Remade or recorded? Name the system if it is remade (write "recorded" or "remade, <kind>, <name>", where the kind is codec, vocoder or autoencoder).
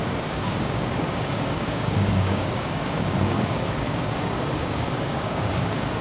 remade, codec, DAC